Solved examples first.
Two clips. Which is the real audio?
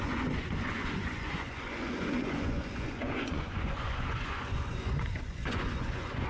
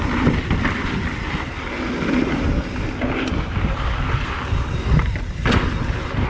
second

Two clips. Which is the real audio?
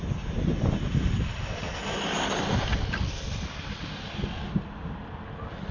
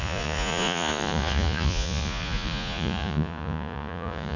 first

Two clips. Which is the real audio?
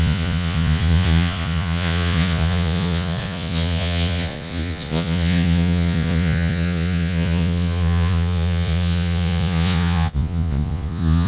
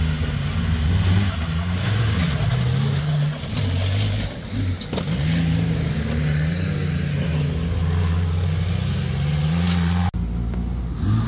second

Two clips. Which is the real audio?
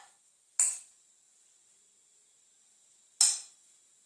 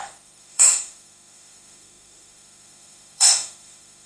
first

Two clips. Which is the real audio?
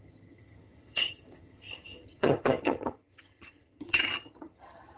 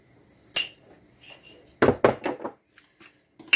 second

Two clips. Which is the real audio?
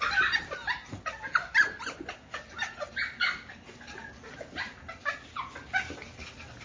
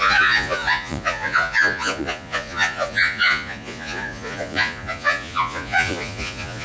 first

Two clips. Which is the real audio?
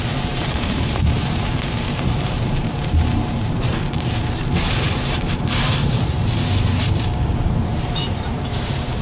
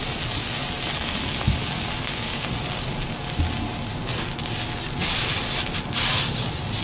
second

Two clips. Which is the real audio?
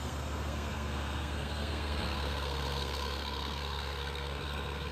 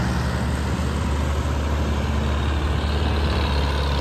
second